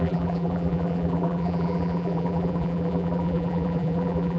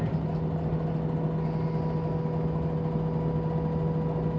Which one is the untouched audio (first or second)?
second